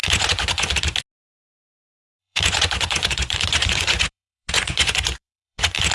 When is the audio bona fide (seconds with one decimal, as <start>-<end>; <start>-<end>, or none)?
0.7-2.2